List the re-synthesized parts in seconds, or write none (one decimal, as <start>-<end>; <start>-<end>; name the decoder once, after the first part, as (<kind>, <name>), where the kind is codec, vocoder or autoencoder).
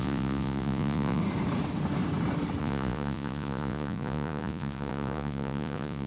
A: 0.0-1.2 (vocoder, Vocos); 2.6-6.1